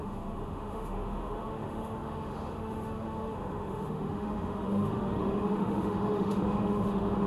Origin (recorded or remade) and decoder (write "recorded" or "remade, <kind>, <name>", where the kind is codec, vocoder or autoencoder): remade, autoencoder, DAC-VAE